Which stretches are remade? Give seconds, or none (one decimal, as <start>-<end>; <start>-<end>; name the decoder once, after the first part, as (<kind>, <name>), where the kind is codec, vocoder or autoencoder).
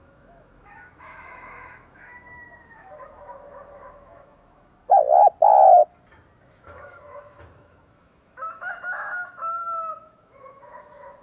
0.0-4.8 (autoencoder, DAC-VAE); 6.4-11.2